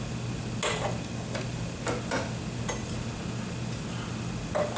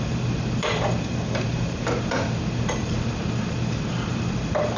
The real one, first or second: first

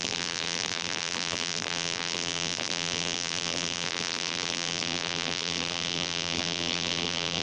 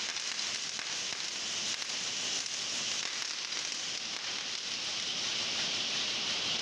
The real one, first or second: second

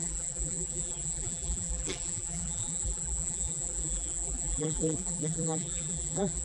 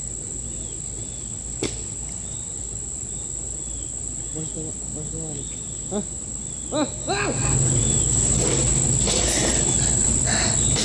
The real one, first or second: second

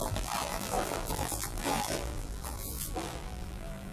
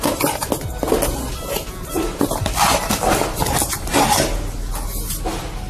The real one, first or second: second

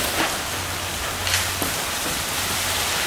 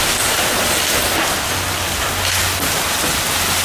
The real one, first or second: second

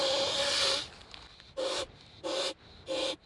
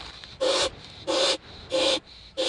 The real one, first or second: first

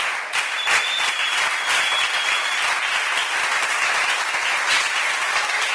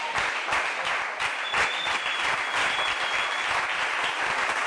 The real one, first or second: first